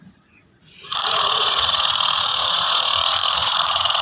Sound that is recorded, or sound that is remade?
remade